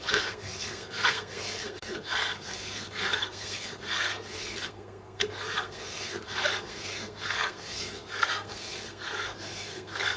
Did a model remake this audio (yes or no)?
yes